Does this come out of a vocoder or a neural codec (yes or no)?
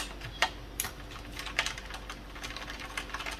no